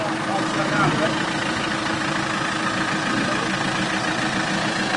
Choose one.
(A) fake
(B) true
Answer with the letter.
B